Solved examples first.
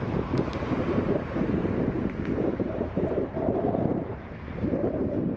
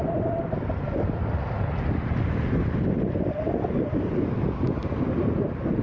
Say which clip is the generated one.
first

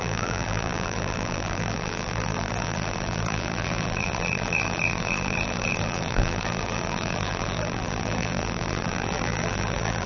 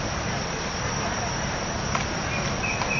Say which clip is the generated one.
first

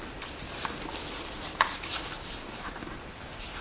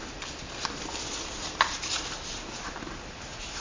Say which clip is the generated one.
first